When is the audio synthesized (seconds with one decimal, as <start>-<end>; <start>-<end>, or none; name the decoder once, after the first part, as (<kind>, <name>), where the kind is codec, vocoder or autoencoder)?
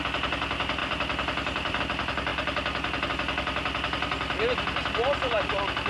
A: 0.8-1.8 (vocoder, BigVGAN v2)